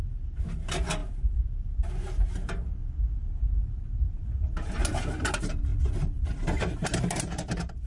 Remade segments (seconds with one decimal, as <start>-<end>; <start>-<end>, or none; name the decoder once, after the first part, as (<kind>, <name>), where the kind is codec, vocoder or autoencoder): 0.0-2.8 (vocoder, BigVGAN v2); 3.6-5.7; 6.6-7.9